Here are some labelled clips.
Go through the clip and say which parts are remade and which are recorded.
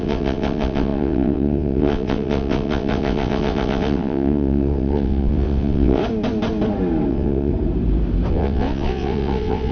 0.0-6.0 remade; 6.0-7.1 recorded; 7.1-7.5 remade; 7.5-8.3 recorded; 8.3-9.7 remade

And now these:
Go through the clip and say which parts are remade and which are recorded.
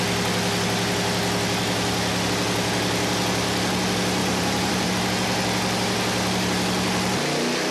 0.0-4.2 recorded; 4.2-4.9 remade; 4.9-7.7 recorded